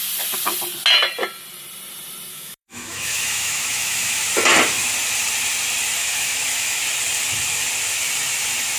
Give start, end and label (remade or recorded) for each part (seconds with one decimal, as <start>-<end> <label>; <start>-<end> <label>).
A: 0.0-2.3 recorded; 2.3-4.2 remade; 4.2-6.0 recorded; 6.0-6.8 remade; 6.8-8.8 recorded

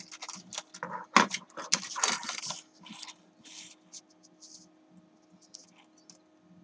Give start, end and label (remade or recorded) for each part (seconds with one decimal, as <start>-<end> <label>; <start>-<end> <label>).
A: 0.0-6.6 recorded